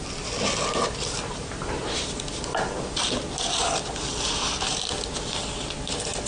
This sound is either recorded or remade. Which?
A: recorded